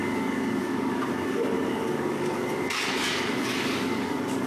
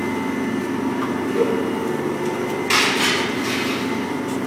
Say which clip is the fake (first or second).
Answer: first